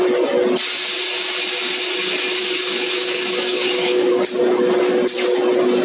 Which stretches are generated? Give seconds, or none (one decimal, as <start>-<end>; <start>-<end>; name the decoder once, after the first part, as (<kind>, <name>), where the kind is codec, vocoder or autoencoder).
2.4-4.1 (codec, DAC)